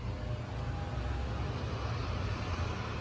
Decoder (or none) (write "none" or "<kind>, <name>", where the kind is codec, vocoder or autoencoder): none